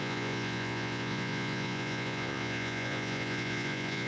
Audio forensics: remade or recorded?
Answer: remade